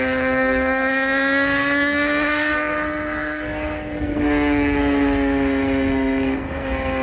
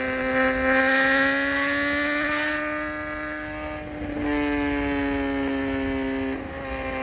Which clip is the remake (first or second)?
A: first